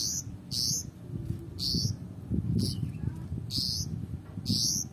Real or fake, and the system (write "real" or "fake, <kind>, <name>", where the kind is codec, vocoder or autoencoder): real